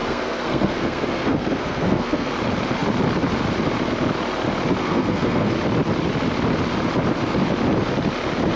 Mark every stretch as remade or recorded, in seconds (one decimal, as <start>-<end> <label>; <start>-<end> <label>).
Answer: 0.0-2.3 remade; 2.3-4.8 recorded; 4.8-5.5 remade; 5.5-8.6 recorded